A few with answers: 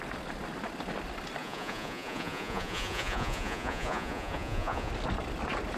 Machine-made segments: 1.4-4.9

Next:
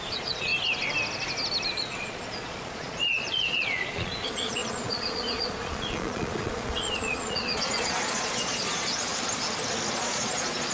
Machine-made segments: 0.0-0.5; 1.7-9.1; 9.9-10.7

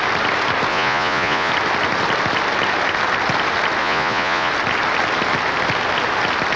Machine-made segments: 0.7-1.5; 3.8-4.5

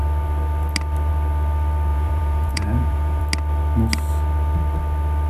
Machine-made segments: 1.9-3.2

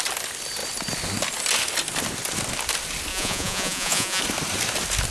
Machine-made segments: 3.1-4.2

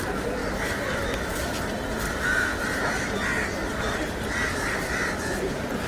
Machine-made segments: none

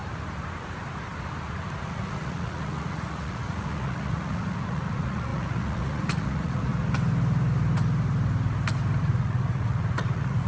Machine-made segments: 1.8-6.7; 9.0-10.5